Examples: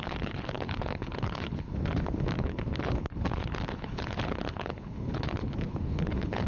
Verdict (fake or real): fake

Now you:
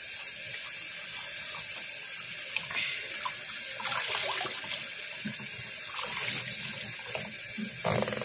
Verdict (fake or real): real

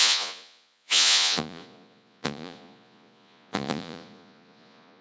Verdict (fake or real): fake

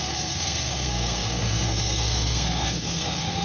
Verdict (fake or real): fake